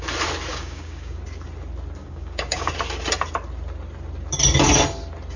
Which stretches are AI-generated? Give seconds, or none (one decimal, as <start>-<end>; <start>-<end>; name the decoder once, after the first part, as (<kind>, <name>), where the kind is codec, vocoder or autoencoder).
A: 0.5-1.2 (codec, DAC); 2.0-2.7